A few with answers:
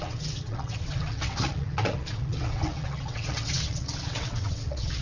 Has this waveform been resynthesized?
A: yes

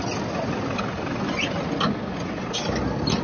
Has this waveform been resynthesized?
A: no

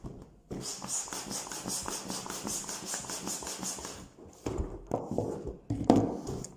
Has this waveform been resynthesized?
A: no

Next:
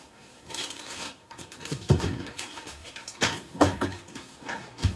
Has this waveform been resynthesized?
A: yes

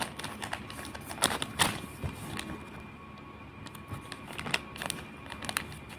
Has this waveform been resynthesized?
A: no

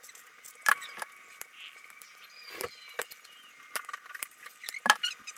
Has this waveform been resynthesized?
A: yes